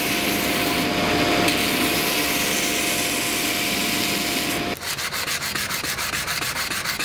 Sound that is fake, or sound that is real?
real